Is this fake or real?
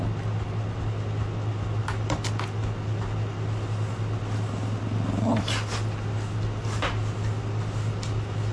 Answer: real